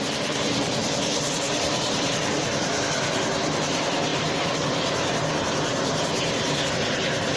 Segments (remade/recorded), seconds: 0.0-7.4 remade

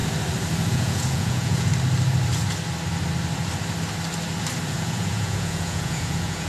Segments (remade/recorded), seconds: 0.0-0.7 recorded; 0.7-1.7 remade; 1.7-4.7 recorded; 4.7-6.5 remade

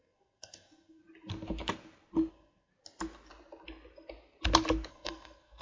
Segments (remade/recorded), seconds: 0.0-1.0 remade; 1.0-2.3 recorded; 2.3-2.7 remade; 2.7-4.9 recorded; 4.9-5.6 remade

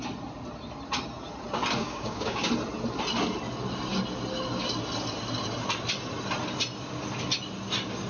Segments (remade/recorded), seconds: 0.0-1.8 recorded; 1.8-2.5 remade; 2.5-8.1 recorded

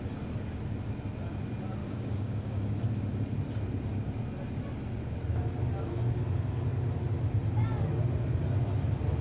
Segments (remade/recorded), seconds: 0.0-1.8 recorded; 1.8-2.8 remade; 2.8-9.2 recorded

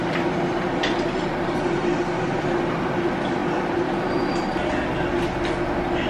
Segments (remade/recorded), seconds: 0.0-6.1 recorded